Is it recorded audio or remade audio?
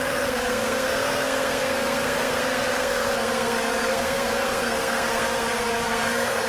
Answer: remade